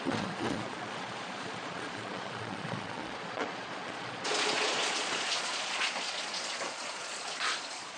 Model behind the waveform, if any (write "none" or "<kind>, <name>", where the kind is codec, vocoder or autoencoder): vocoder, Vocos